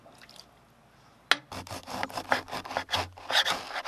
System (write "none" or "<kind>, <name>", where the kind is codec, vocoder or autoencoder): none